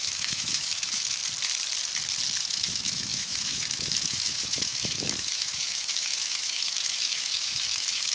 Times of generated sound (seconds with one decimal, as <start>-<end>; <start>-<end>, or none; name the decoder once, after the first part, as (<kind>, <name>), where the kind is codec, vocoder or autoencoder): 0.0-1.2 (autoencoder, DAC-VAE); 2.5-8.1